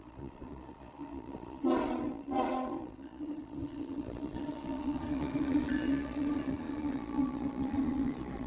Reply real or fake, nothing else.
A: fake